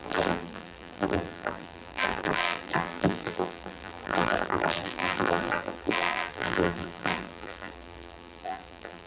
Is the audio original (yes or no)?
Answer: no